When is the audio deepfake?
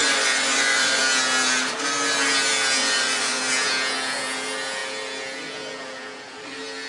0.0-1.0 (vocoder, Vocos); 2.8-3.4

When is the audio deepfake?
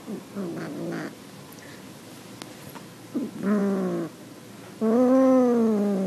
none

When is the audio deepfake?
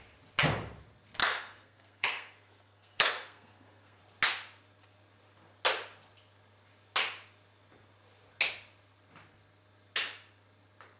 1.2-4.0 (codec, SNAC)